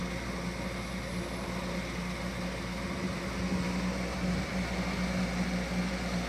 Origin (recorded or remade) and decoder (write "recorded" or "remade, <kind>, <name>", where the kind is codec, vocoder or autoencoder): recorded